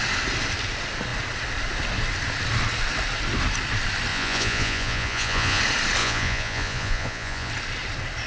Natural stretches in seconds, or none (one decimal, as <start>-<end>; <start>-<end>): 0.0-4.1; 5.6-6.0; 7.5-8.3